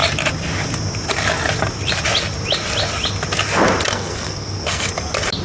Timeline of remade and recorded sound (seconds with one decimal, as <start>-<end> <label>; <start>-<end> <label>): 0.0-3.9 recorded; 3.9-4.9 remade; 4.9-5.4 recorded